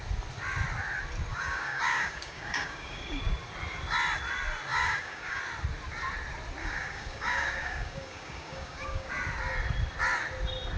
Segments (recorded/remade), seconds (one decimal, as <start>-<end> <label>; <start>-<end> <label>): 0.0-1.3 recorded; 1.3-3.2 remade; 3.2-4.7 recorded; 4.7-5.4 remade; 5.4-6.6 recorded; 6.6-9.1 remade; 9.1-10.8 recorded